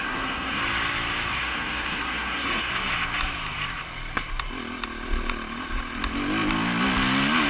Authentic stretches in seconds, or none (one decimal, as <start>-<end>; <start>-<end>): 0.6-1.3; 2.7-7.5